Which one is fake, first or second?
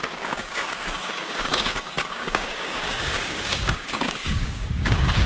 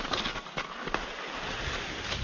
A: first